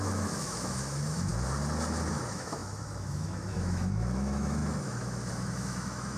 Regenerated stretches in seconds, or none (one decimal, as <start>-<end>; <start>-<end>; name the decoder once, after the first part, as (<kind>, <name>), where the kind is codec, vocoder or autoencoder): 0.0-1.3 (autoencoder, DAC-VAE); 2.1-6.2